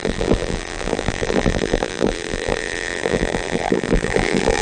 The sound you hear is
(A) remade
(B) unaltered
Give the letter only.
A